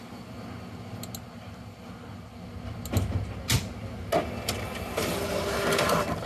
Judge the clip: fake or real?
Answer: real